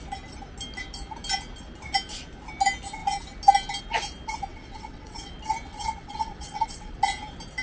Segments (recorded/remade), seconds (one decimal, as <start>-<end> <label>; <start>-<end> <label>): 0.0-4.5 recorded; 4.5-5.3 remade; 5.3-5.7 recorded; 5.7-7.0 remade; 7.0-7.6 recorded